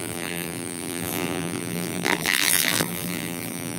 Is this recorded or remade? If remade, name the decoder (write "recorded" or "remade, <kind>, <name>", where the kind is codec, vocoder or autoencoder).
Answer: remade, vocoder, BigVGAN v2